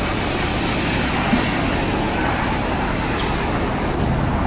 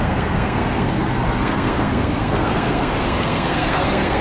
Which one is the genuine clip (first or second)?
first